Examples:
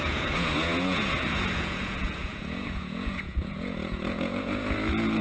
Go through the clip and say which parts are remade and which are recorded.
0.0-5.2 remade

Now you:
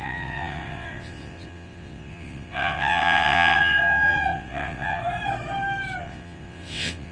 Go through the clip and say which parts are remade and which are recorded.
0.0-5.0 remade; 5.0-6.0 recorded; 6.0-7.1 remade

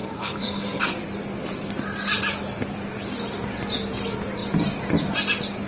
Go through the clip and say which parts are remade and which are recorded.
0.0-1.0 remade; 1.0-5.7 recorded

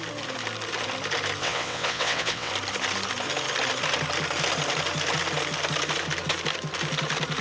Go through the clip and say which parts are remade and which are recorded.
0.0-1.4 recorded; 1.4-2.5 remade; 2.5-7.4 recorded

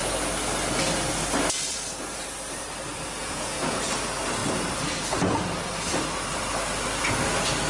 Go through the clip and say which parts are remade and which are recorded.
0.0-3.2 recorded; 3.2-3.8 remade; 3.8-7.7 recorded

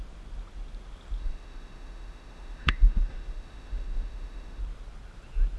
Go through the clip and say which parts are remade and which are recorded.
0.0-1.2 recorded; 1.2-4.6 remade; 4.6-5.6 recorded

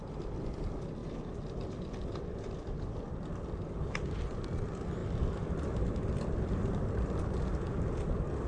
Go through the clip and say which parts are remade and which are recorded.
0.0-8.5 recorded